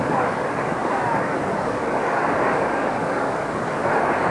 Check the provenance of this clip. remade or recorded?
remade